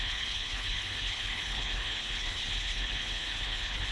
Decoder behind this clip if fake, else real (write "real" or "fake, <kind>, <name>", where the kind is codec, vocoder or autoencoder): fake, codec, HILCodec